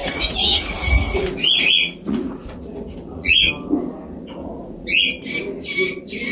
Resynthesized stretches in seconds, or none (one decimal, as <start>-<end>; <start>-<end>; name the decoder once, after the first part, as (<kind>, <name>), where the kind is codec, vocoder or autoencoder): 0.0-3.5 (vocoder, Vocos); 4.4-5.0